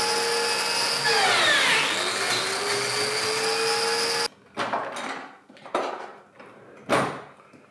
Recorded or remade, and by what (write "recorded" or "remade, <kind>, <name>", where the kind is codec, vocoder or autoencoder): recorded